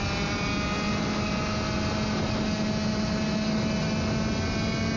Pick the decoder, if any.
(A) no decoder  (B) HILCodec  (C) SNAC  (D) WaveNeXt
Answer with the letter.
A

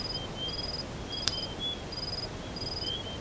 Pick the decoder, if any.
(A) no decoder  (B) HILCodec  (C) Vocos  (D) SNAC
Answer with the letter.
A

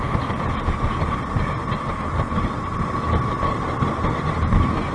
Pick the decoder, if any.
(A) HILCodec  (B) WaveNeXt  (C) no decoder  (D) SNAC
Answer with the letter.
C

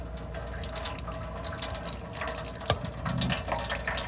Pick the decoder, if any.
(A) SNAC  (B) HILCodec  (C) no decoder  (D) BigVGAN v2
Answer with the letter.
C